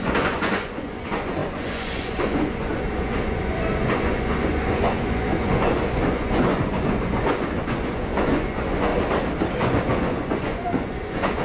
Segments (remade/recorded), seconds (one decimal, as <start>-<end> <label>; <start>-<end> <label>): 0.0-8.9 remade; 8.9-9.5 recorded; 9.5-11.4 remade